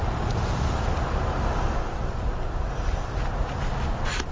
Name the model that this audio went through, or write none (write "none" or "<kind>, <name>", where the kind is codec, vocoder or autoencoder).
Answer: none